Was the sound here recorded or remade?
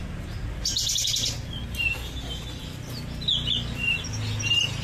recorded